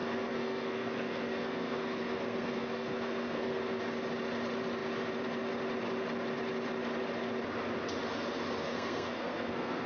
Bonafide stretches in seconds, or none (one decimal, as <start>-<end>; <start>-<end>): 3.8-8.6